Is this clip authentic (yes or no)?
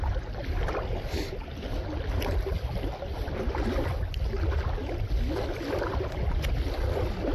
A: yes